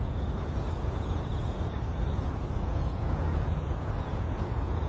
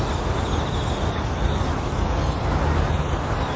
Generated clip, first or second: first